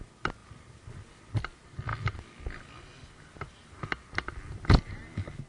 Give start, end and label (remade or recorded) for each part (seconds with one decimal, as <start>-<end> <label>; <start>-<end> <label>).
0.0-5.5 recorded